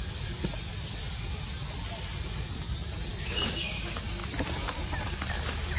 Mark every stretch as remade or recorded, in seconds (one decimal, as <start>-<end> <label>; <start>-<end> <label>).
0.0-3.1 recorded; 3.1-3.8 remade; 3.8-5.8 recorded